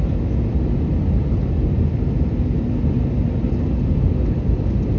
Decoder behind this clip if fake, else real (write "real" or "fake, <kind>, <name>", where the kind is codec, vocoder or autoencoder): real